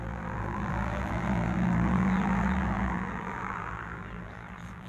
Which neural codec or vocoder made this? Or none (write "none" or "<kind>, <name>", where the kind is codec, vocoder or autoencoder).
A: vocoder, BigVGAN v2